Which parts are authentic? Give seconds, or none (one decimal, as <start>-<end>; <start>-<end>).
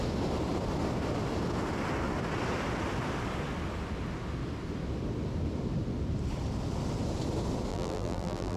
0.0-7.7